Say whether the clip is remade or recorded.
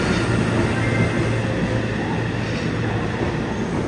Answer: recorded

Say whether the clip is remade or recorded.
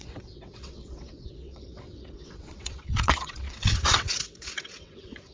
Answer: remade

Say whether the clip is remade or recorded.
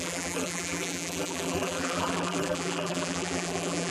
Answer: remade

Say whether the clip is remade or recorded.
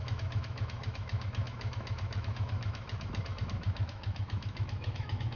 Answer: remade